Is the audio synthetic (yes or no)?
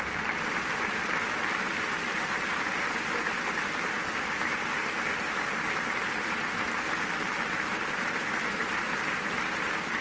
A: no